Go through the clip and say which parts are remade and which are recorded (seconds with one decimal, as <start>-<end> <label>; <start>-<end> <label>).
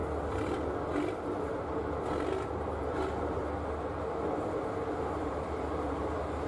0.0-2.4 recorded; 2.4-3.4 remade; 3.4-5.0 recorded; 5.0-6.5 remade